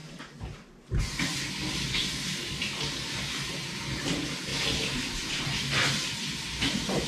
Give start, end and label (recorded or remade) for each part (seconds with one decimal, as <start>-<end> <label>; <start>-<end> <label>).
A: 0.0-7.1 recorded